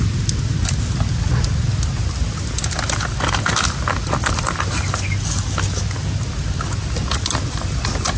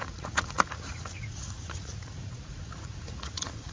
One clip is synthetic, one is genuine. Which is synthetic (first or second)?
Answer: second